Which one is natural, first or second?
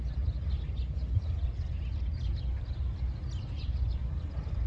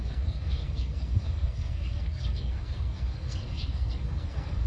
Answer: first